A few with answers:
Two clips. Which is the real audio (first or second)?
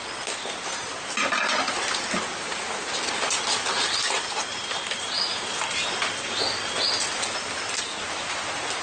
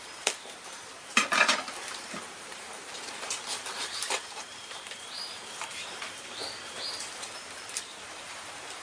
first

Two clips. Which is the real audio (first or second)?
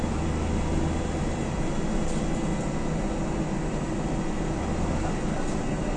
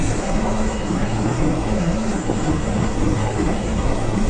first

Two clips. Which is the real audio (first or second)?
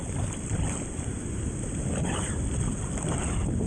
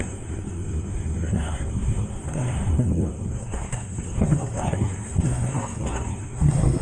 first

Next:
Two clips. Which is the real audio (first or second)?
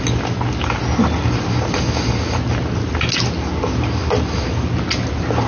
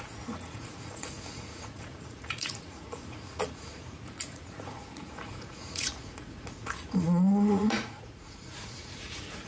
first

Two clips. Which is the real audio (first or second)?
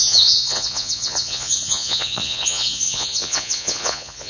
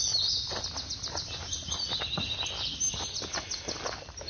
second